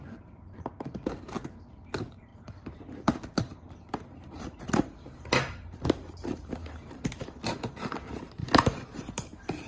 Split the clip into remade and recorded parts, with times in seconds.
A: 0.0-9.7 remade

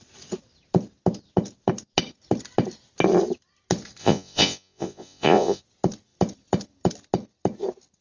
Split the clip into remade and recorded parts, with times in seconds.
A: 0.0-4.0 recorded; 4.0-5.6 remade; 5.6-8.0 recorded

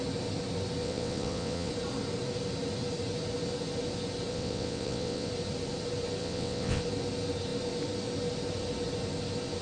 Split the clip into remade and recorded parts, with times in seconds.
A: 0.0-0.8 recorded; 0.8-1.7 remade; 1.7-4.3 recorded; 4.3-5.3 remade; 5.3-6.2 recorded; 6.2-6.8 remade; 6.8-9.6 recorded

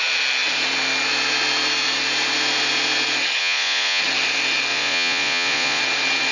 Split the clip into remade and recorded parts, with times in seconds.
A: 0.0-3.4 recorded; 3.4-4.0 remade; 4.0-4.7 recorded; 4.7-5.8 remade; 5.8-6.3 recorded

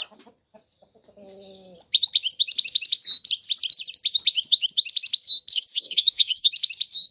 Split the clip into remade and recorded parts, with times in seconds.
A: 0.0-5.5 recorded; 5.5-6.5 remade; 6.5-7.1 recorded

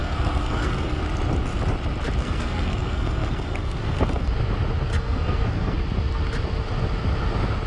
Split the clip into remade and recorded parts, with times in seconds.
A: 0.0-1.0 remade; 1.0-2.2 recorded; 2.2-4.3 remade; 4.3-4.9 recorded; 4.9-5.8 remade; 5.8-7.7 recorded

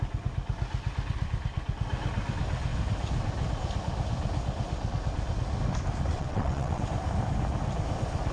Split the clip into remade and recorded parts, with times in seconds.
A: 0.0-6.1 recorded; 6.1-6.8 remade; 6.8-8.3 recorded